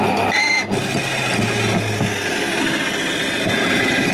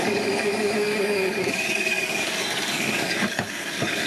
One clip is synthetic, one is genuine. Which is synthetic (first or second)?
second